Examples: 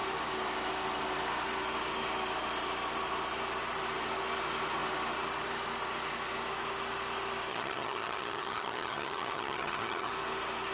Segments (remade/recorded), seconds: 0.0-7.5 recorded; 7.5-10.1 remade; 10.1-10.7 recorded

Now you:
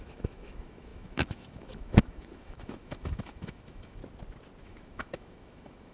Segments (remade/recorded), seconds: 0.0-4.0 remade; 4.0-4.6 recorded; 4.6-5.9 remade

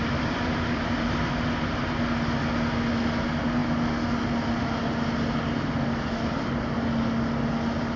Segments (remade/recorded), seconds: 0.0-1.3 remade; 1.3-8.0 recorded

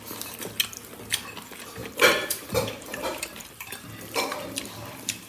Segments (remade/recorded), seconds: 0.0-1.8 recorded; 1.8-3.9 remade; 3.9-5.3 recorded

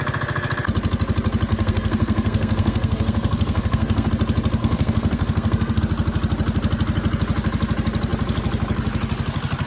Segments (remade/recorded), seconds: 0.0-1.5 recorded; 1.5-4.1 remade; 4.1-4.6 recorded; 4.6-5.8 remade; 5.8-9.7 recorded

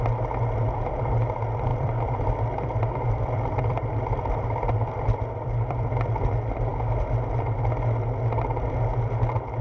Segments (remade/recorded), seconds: 0.0-1.7 recorded; 1.7-6.3 remade; 6.3-9.6 recorded